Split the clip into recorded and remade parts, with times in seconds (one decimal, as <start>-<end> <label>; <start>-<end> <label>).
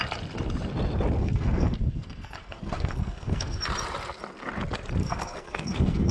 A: 0.0-1.2 recorded; 1.2-3.6 remade; 3.6-5.0 recorded; 5.0-6.1 remade